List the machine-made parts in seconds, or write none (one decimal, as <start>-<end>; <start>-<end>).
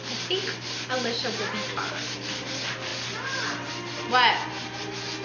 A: none